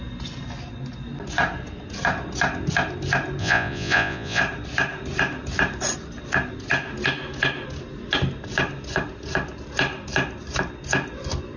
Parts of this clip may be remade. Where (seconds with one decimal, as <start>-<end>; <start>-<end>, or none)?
3.4-4.4